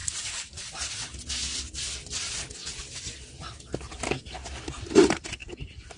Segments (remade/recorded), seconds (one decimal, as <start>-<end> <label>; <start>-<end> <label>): 0.0-0.7 remade; 0.7-6.0 recorded